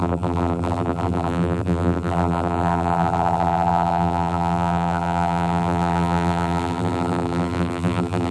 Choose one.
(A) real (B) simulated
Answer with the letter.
B